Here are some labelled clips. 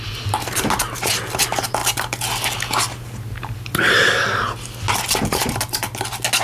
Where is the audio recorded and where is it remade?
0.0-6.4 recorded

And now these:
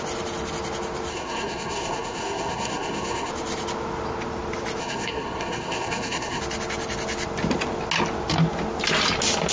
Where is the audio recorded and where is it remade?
0.0-1.1 recorded; 1.1-3.3 remade; 3.3-4.8 recorded; 4.8-6.4 remade; 6.4-9.5 recorded